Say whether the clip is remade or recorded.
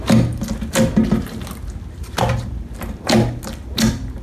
recorded